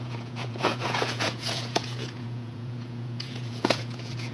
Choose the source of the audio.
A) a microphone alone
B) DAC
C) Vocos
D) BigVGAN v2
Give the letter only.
C